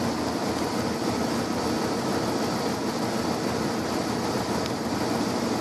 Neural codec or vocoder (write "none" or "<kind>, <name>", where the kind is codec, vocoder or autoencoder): none